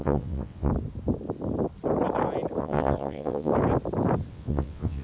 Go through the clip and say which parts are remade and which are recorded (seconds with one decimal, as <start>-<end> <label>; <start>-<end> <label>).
0.0-0.7 remade; 0.7-2.6 recorded; 2.6-3.5 remade; 3.5-4.3 recorded; 4.3-5.0 remade